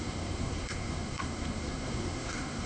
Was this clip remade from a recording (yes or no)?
yes